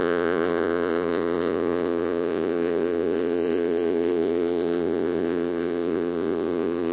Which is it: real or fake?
fake